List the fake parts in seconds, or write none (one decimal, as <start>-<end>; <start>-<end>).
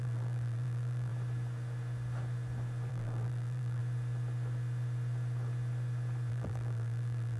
0.0-1.1; 2.9-3.8; 6.3-7.4